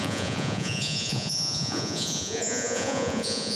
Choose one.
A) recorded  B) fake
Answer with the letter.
B